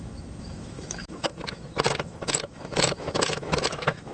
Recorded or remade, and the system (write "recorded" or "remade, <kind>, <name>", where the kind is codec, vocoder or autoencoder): remade, autoencoder, DAC-VAE